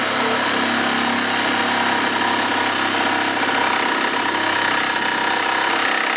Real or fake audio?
real